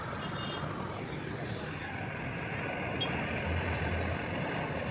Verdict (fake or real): real